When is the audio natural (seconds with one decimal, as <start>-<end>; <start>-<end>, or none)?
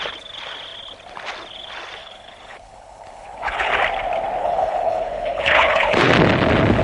0.0-2.0; 3.7-4.4; 6.1-6.8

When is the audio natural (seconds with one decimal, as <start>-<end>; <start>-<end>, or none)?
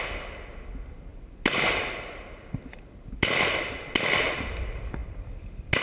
0.0-5.8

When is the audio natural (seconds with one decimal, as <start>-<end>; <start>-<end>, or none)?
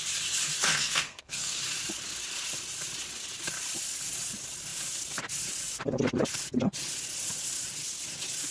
0.0-0.7; 1.6-8.5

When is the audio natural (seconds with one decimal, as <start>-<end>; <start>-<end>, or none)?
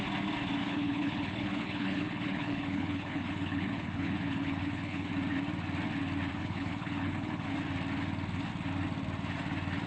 0.0-0.6; 5.1-6.3; 7.5-9.9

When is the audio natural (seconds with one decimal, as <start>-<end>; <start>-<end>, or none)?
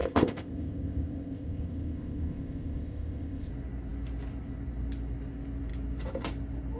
3.5-6.8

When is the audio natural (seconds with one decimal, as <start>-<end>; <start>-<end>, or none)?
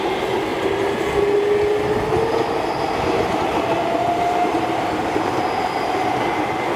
0.0-3.2; 5.4-6.8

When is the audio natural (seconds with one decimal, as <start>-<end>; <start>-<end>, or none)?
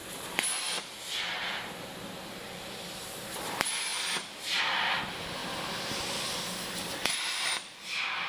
0.0-8.3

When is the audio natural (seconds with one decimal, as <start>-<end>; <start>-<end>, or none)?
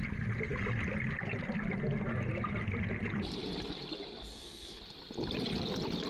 0.0-4.3; 4.8-6.1